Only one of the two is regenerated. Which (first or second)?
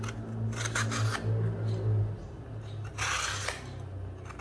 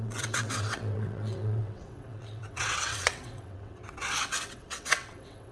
second